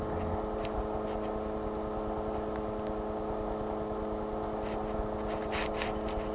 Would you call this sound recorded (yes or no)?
yes